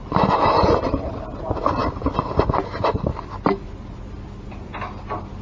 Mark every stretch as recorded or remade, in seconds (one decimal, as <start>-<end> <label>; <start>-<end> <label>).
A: 0.0-5.4 recorded